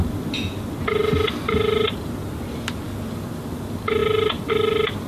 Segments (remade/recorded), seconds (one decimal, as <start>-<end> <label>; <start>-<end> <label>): 0.0-4.0 recorded; 4.0-4.5 remade; 4.5-5.1 recorded